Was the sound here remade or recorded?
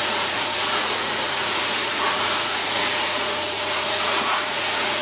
remade